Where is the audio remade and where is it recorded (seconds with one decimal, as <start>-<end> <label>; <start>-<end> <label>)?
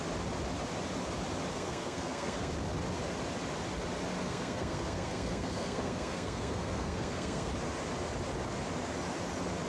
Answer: 0.0-1.5 recorded; 1.5-2.5 remade; 2.5-4.2 recorded; 4.2-7.5 remade; 7.5-9.7 recorded